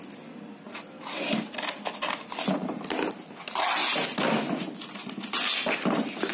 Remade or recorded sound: recorded